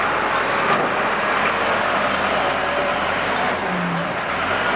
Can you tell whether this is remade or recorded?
recorded